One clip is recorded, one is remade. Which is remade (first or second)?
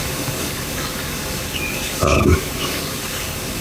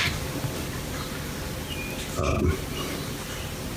first